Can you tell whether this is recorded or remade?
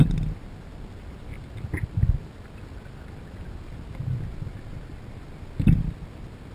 recorded